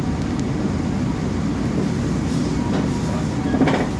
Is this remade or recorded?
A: recorded